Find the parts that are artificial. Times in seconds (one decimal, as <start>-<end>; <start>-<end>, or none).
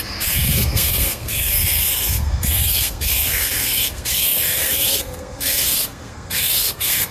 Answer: 0.0-7.1